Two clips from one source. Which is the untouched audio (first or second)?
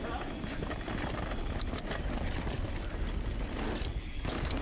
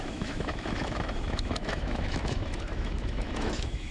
first